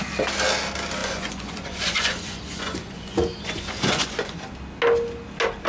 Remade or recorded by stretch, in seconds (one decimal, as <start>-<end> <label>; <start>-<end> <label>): 0.0-1.0 recorded; 1.0-4.4 remade; 4.4-5.7 recorded